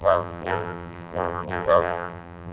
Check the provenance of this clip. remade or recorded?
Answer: remade